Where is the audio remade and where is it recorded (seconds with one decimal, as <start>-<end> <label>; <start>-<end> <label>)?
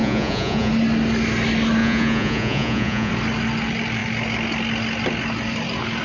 0.0-0.7 remade; 0.7-1.8 recorded; 1.8-3.1 remade; 3.1-6.0 recorded